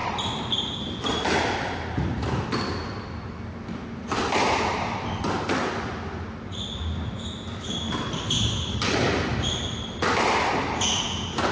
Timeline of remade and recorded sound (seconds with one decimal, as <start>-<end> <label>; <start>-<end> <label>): 0.0-11.5 recorded